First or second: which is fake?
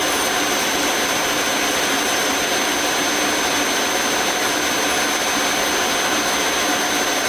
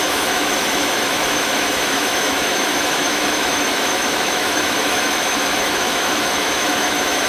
second